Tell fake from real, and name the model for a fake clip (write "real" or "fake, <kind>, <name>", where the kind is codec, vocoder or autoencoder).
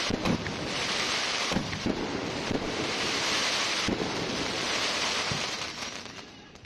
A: fake, vocoder, BigVGAN v2